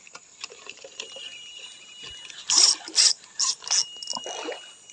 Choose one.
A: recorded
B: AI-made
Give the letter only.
A